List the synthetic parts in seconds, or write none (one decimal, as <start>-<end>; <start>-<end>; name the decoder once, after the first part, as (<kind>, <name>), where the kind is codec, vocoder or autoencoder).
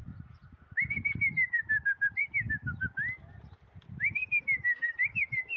1.8-2.2 (vocoder, BigVGAN v2); 3.3-5.6